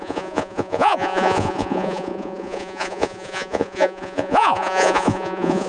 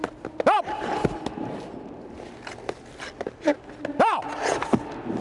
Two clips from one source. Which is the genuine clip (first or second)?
second